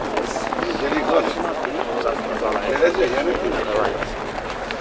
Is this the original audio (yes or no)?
yes